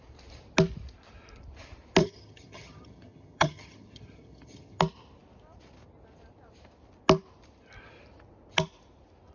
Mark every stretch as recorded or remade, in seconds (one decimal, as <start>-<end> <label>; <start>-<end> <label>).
0.0-2.0 recorded; 2.0-4.8 remade; 4.8-9.3 recorded